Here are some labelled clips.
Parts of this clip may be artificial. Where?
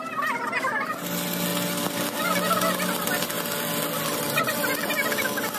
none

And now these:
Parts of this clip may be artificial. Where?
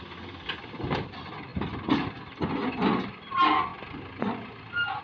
none